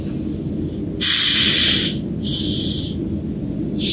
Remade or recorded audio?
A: remade